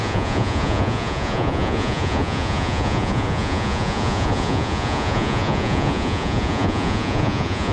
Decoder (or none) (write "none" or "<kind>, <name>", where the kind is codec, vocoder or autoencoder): vocoder, Vocos